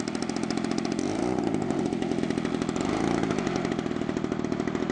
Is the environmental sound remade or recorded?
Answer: recorded